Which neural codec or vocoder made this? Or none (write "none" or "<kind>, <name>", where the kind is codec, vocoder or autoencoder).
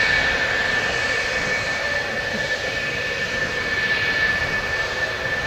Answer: none